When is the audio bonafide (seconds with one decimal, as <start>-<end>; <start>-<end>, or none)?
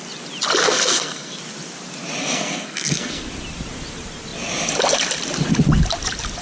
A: 0.0-0.6; 1.4-2.2; 3.3-6.4